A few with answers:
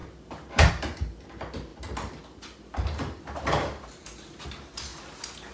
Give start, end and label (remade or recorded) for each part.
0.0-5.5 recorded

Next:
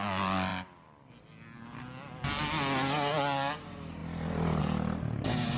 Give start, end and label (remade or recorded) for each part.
0.0-0.5 recorded; 0.5-1.1 remade; 1.1-5.6 recorded